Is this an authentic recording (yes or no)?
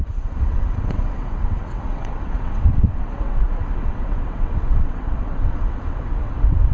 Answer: no